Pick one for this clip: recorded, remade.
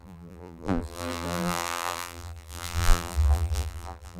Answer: remade